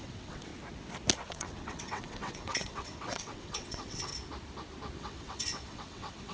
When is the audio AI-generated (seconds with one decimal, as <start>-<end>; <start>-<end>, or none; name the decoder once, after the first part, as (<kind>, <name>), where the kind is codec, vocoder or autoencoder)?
0.0-0.5 (vocoder, WaveNeXt); 1.3-4.1; 5.0-6.3